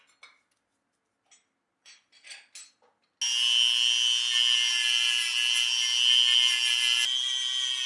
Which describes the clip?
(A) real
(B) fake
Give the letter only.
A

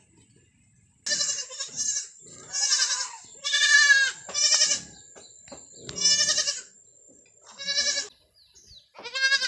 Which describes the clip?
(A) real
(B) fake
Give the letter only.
A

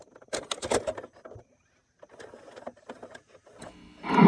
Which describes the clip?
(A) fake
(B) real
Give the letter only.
B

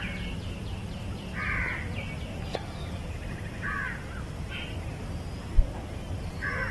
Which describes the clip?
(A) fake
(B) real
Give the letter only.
B